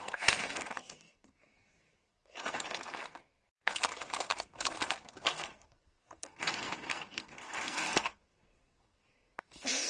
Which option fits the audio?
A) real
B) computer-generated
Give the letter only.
B